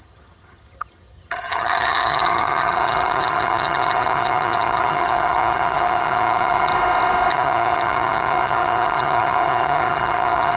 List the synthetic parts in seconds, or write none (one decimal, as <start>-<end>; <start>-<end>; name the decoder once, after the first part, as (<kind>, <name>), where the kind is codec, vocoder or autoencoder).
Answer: 0.0-6.7 (vocoder, HiFi-GAN); 7.3-10.6